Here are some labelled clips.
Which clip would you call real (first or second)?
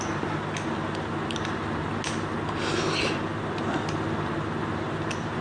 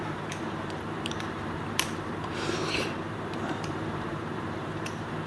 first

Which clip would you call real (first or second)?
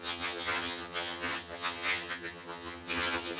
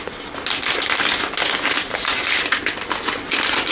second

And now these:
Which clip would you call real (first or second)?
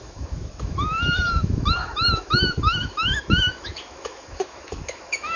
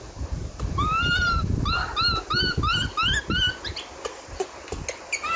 second